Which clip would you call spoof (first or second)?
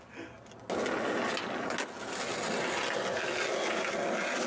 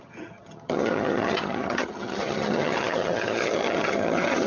second